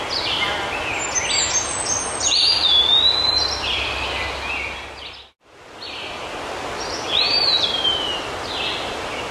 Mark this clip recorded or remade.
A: recorded